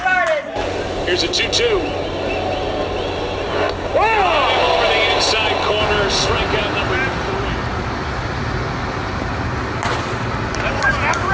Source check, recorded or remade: recorded